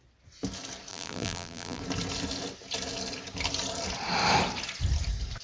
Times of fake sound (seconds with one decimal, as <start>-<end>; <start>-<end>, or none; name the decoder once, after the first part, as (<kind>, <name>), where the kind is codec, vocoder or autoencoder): 0.9-1.8 (vocoder, BigVGAN v2)